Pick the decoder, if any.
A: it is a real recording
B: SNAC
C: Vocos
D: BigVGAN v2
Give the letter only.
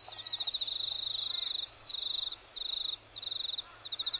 A